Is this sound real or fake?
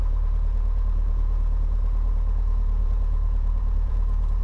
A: fake